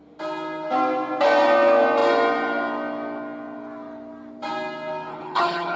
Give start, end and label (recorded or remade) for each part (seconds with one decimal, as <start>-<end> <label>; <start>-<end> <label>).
0.0-5.1 recorded; 5.1-5.8 remade